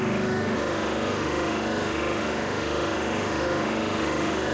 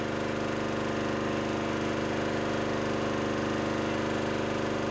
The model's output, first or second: first